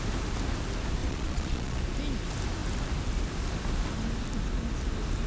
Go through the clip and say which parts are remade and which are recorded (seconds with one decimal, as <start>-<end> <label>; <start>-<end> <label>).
0.0-1.0 recorded; 1.0-1.8 remade; 1.8-5.3 recorded

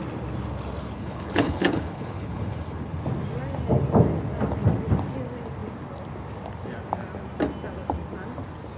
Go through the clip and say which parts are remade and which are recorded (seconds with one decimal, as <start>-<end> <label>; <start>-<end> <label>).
0.0-0.8 recorded; 0.8-3.0 remade; 3.0-8.8 recorded